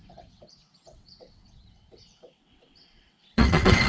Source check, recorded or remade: remade